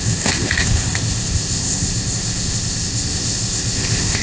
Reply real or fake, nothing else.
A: fake